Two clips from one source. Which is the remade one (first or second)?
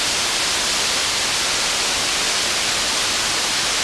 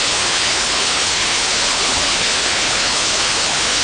second